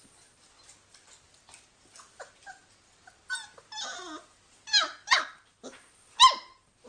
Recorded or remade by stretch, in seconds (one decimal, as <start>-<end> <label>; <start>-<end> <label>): 0.0-6.9 recorded